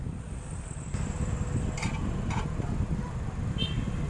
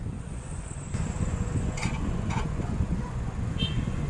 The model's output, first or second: second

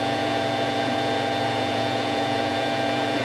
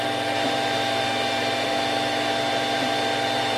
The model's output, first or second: first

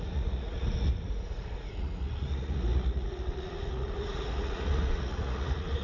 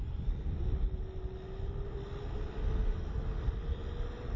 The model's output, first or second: first